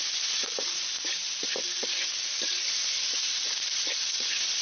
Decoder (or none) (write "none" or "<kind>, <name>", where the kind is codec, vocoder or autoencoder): none